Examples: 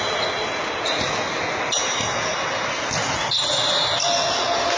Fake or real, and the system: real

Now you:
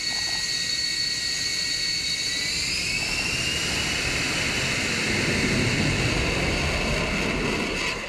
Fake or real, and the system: real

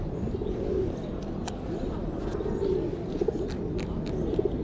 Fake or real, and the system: real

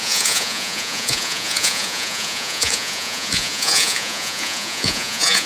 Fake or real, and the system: fake, vocoder, Vocos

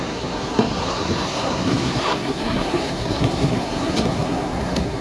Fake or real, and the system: fake, codec, SNAC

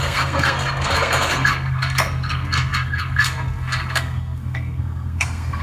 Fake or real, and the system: fake, codec, SNAC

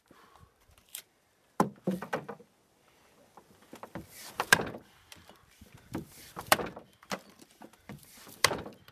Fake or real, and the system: fake, vocoder, BigVGAN v2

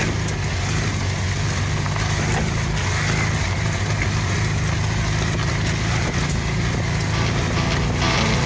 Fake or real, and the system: real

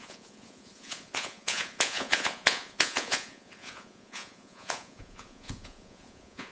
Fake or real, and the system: fake, vocoder, Vocos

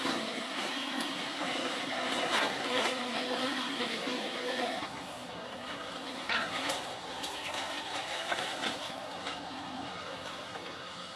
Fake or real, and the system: fake, codec, SNAC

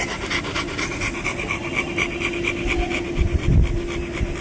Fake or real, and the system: real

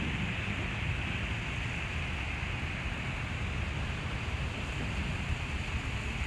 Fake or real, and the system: real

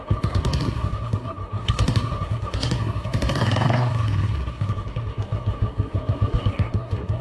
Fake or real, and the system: fake, codec, SNAC